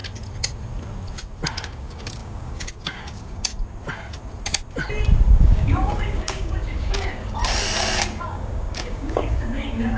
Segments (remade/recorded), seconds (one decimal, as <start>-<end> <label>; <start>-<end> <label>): 0.0-1.5 recorded; 1.5-3.5 remade; 3.5-5.4 recorded; 5.4-7.4 remade; 7.4-8.2 recorded; 8.2-10.0 remade